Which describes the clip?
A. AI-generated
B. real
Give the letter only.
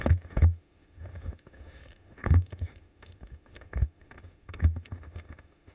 A